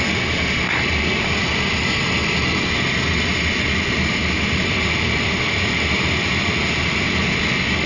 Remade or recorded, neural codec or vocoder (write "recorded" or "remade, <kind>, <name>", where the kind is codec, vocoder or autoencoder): recorded